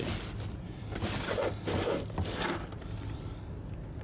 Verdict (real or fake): real